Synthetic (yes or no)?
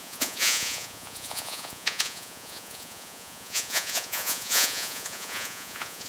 yes